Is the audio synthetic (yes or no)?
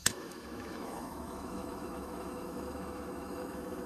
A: yes